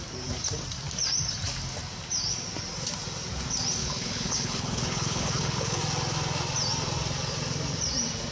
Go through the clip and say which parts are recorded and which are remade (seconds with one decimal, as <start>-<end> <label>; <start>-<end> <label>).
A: 0.0-3.8 recorded; 3.8-5.8 remade; 5.8-8.3 recorded